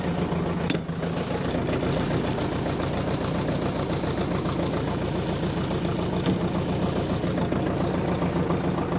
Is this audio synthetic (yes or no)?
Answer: no